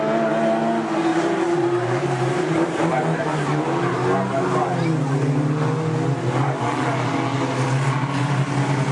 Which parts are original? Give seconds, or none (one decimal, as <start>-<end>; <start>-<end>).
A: 0.0-1.1; 2.9-8.9